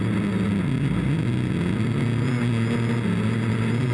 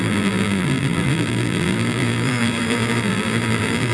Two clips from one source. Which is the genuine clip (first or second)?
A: first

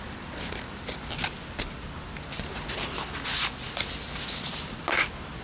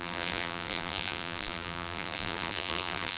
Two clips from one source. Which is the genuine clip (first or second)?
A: first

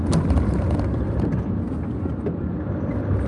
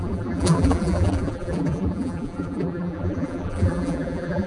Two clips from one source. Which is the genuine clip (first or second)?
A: first